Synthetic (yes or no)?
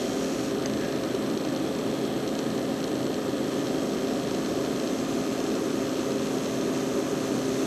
no